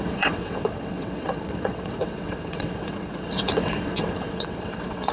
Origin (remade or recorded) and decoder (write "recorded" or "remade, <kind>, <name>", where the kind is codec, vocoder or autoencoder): remade, vocoder, WaveNeXt